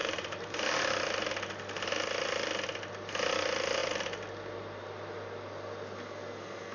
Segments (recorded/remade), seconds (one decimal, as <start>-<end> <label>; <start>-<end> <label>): 0.0-0.7 remade; 0.7-6.7 recorded